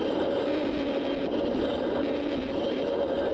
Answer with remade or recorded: recorded